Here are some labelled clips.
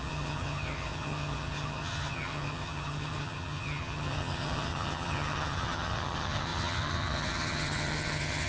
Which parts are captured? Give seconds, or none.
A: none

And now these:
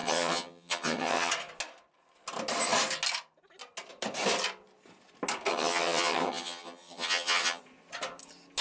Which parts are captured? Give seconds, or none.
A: 1.3-5.5; 7.6-8.6

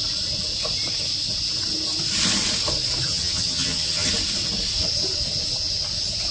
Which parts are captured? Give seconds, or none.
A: 0.0-3.1; 4.1-6.3

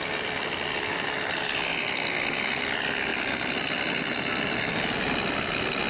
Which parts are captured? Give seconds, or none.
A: 0.0-5.9